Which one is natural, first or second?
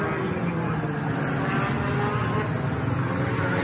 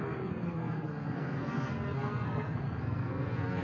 first